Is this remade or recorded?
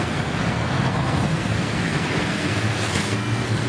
remade